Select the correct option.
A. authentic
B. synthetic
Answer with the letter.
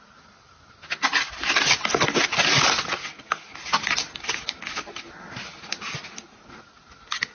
A